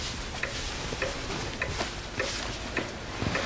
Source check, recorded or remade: recorded